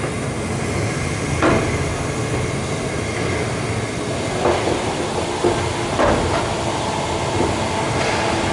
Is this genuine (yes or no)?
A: yes